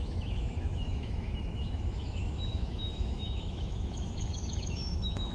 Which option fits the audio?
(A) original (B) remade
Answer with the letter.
B